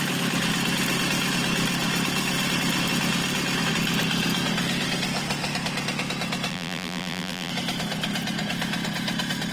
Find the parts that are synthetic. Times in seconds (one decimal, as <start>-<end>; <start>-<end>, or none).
6.5-7.5